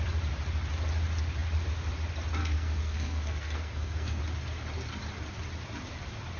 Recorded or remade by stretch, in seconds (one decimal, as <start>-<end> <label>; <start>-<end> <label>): 0.0-2.4 recorded; 2.4-4.2 remade; 4.2-6.4 recorded